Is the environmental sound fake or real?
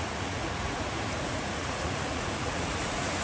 fake